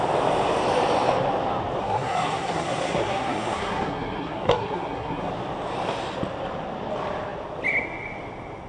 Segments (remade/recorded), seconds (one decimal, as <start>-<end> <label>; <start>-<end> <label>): 0.0-1.8 recorded; 1.8-5.3 remade; 5.3-8.7 recorded